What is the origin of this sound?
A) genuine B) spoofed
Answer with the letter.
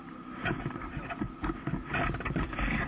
A